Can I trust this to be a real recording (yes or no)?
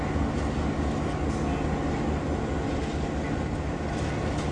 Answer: yes